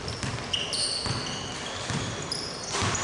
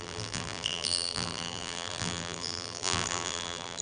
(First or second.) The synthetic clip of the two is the second